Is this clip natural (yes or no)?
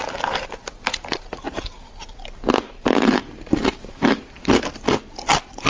yes